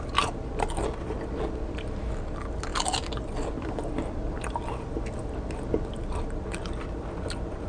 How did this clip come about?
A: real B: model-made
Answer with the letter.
A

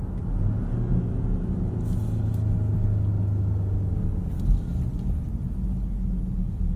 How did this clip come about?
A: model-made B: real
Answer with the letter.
B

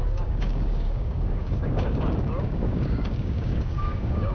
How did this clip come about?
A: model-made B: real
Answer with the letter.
A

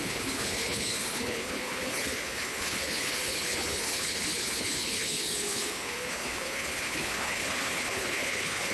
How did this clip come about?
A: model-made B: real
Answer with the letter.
A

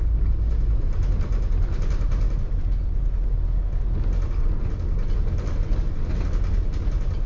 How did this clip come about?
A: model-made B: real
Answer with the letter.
B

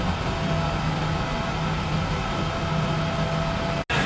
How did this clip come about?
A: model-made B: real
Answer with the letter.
B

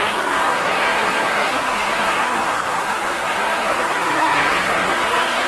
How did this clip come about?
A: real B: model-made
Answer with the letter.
B